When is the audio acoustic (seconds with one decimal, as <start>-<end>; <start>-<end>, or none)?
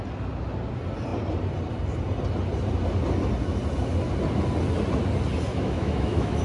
0.0-5.5